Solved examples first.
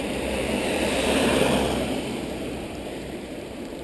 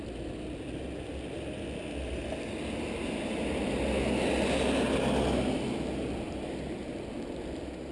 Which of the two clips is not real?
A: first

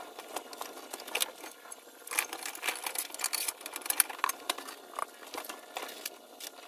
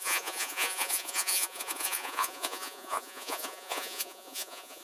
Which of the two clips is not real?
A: second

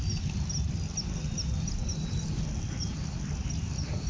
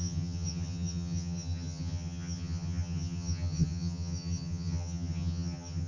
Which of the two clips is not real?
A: second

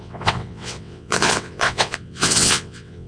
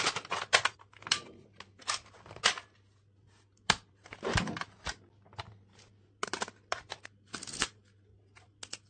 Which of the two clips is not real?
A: first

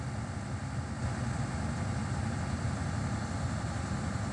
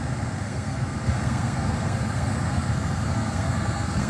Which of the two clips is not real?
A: second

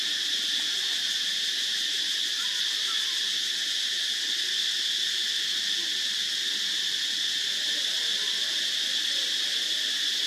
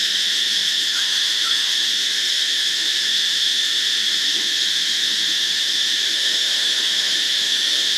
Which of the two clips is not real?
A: second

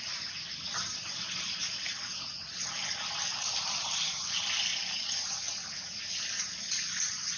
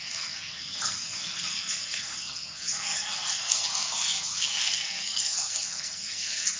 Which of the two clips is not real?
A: second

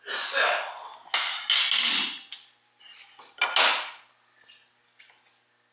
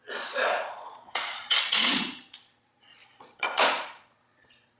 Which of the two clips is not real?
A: second